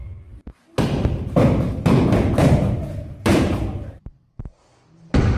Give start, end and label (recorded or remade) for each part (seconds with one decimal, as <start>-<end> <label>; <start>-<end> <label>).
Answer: 0.0-2.4 recorded; 2.4-4.3 remade; 4.3-5.4 recorded